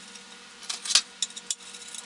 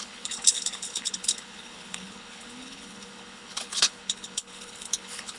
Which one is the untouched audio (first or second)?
first